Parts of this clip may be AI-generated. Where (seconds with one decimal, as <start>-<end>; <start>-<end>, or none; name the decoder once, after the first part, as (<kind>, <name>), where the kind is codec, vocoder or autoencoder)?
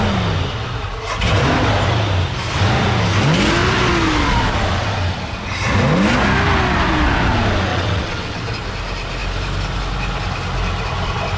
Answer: 7.7-8.4 (vocoder, WaveNeXt)